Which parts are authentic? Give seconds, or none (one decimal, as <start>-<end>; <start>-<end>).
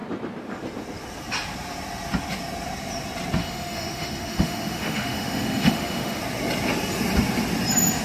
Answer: 0.0-3.4; 6.2-8.0